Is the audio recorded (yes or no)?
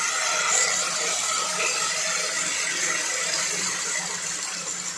no